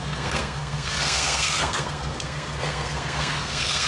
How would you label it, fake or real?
fake